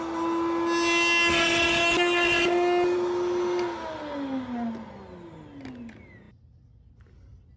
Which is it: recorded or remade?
recorded